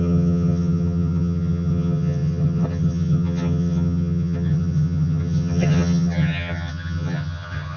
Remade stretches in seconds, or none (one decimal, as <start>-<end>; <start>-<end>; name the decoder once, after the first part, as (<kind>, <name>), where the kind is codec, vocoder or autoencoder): 0.0-7.8 (vocoder, HiFi-GAN)